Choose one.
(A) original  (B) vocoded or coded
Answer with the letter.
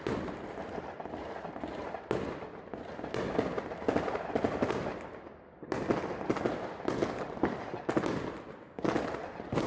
A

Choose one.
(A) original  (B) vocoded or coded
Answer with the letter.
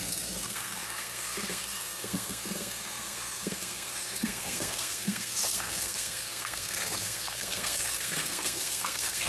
B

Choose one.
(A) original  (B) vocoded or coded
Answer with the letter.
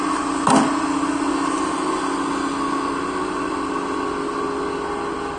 A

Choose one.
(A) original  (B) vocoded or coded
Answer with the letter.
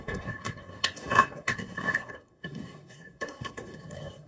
B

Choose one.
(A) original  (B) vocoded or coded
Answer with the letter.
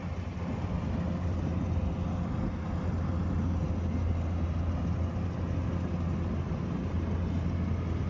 A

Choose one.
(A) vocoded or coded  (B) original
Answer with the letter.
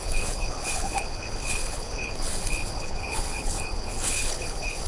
A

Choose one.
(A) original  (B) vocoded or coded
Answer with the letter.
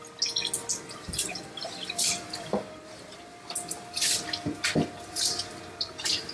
A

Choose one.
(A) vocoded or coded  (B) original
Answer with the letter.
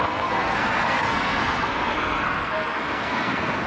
A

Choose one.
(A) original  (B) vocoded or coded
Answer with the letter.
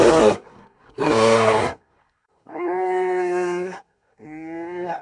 B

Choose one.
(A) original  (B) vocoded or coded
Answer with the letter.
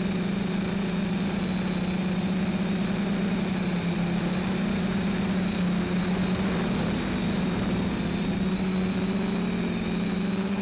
A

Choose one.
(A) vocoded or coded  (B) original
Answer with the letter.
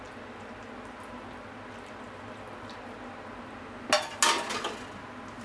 B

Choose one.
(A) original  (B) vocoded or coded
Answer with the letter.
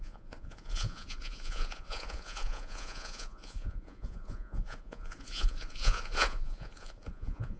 B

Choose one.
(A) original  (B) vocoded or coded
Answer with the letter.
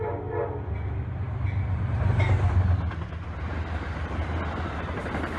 A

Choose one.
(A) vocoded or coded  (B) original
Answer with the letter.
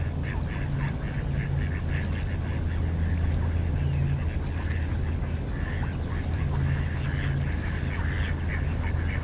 B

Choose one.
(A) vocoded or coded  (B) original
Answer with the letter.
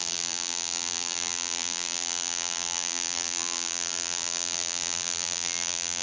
A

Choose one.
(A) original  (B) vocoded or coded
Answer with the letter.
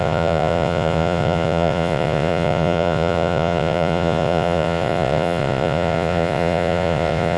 B